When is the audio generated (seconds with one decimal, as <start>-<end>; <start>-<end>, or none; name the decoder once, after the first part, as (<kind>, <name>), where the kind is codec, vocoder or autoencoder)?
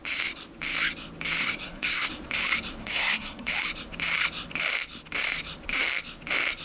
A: 1.4-2.1 (codec, SNAC); 2.8-3.5